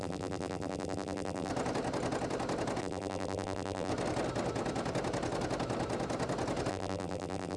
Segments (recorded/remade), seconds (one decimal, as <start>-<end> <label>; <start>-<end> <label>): 0.0-1.5 remade; 1.5-2.8 recorded; 2.8-3.9 remade; 3.9-6.7 recorded; 6.7-7.6 remade